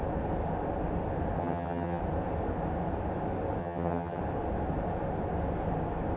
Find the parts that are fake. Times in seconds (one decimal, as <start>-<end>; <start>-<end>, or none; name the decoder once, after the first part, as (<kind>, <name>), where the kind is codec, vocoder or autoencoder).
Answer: 1.4-2.0 (vocoder, HiFi-GAN); 3.6-4.2